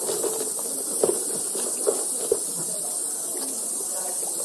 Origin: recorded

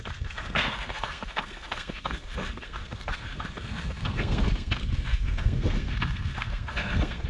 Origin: remade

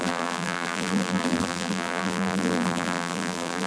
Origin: remade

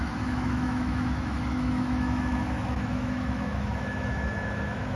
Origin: remade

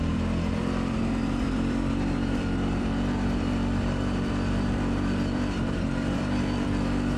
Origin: remade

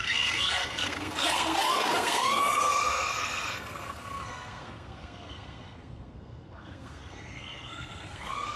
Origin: remade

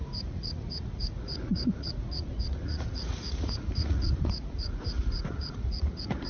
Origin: remade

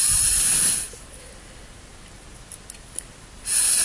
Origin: recorded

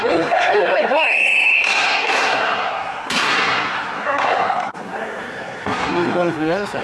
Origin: remade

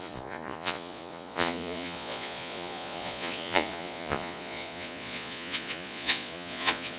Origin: remade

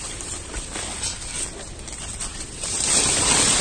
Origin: recorded